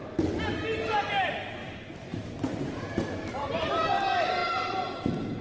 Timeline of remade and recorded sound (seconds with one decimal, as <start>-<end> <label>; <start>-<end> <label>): 0.0-1.6 recorded; 1.6-3.7 remade; 3.7-5.4 recorded